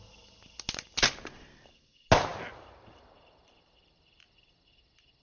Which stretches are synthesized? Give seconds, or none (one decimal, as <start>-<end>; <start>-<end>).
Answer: none